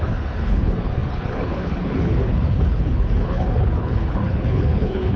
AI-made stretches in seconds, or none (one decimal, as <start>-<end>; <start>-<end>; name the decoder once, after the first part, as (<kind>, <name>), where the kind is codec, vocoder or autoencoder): 0.0-5.2 (codec, HILCodec)